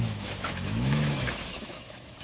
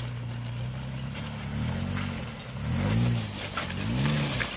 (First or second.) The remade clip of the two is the first